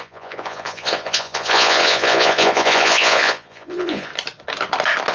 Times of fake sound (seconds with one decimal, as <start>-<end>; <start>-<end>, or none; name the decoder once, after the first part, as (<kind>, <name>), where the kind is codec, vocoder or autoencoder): 0.0-4.1 (vocoder, Vocos)